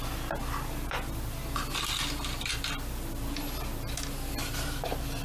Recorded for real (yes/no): yes